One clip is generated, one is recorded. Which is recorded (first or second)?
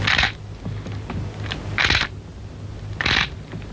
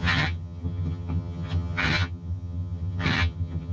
first